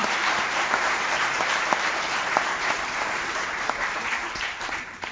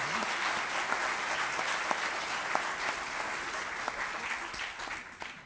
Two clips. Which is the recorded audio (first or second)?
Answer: second